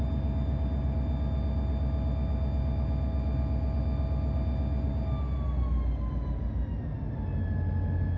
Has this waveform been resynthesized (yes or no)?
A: no